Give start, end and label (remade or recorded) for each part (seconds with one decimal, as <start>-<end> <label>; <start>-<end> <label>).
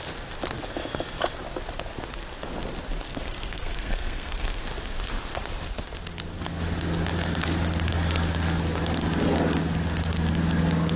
0.0-3.1 recorded; 3.1-4.6 remade; 4.6-11.0 recorded